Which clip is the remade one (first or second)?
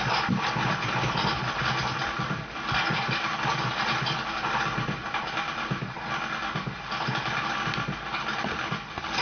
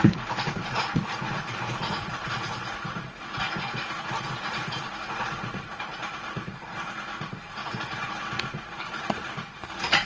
second